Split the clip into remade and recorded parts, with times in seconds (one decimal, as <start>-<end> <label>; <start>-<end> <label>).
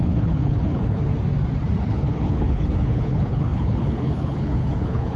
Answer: 0.0-1.1 remade; 1.1-1.8 recorded; 1.8-5.2 remade